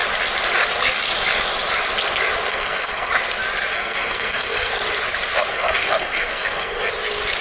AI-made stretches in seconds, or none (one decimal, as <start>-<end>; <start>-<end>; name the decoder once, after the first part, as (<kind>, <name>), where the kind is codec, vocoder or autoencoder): 2.5-3.1 (codec, SNAC); 3.7-4.7; 5.5-6.9